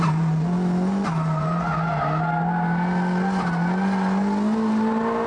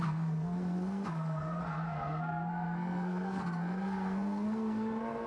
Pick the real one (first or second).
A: first